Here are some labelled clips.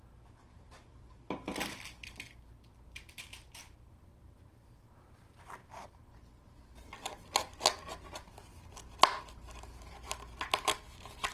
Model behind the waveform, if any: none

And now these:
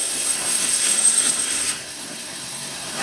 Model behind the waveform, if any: codec, SNAC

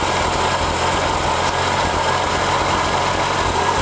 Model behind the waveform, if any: none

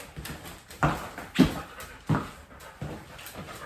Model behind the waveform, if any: none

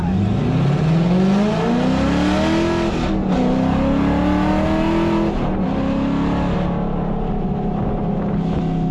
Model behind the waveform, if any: none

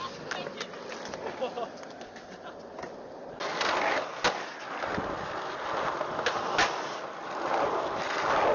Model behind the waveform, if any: none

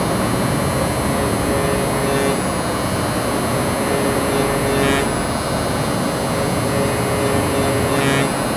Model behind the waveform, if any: none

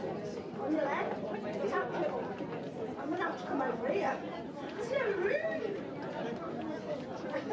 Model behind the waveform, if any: none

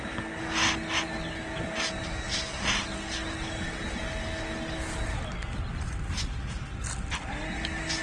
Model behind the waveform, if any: none